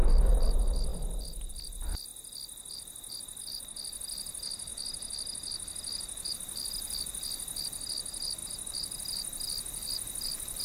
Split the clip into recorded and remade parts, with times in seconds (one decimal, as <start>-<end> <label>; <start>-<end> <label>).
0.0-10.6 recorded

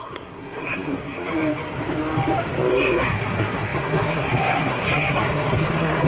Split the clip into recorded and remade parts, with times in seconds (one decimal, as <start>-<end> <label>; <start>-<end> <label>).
0.0-1.3 remade; 1.3-2.7 recorded; 2.7-6.1 remade

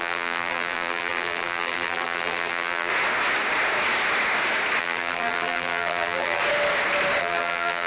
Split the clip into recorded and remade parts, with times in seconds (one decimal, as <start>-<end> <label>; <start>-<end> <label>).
0.0-2.9 remade; 2.9-4.8 recorded; 4.8-6.4 remade; 6.4-7.2 recorded; 7.2-7.9 remade